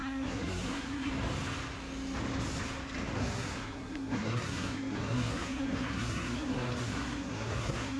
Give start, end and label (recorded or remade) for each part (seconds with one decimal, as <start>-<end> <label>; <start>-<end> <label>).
0.0-1.1 remade; 1.1-3.2 recorded; 3.2-8.0 remade